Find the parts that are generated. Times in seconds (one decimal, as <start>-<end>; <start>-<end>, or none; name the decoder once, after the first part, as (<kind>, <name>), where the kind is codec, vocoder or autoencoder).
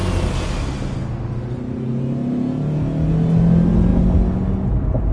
none